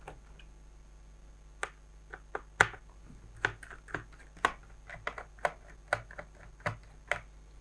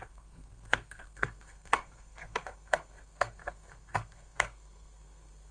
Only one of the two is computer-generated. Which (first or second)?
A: second